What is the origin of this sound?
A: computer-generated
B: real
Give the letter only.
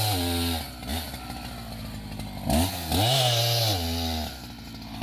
B